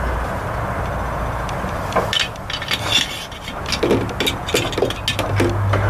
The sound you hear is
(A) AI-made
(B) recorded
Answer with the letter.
B